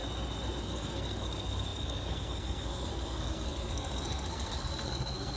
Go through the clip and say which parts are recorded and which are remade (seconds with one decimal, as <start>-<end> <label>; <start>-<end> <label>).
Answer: 0.0-0.6 recorded; 0.6-5.4 remade